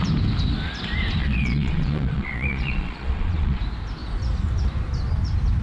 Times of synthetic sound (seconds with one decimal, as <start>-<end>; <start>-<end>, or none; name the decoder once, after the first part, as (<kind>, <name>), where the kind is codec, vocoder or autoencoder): 1.2-3.6 (vocoder, Vocos)